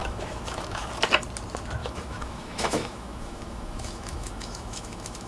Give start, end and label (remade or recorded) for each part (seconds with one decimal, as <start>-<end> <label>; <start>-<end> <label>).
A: 0.0-0.9 remade; 0.9-1.8 recorded; 1.8-5.3 remade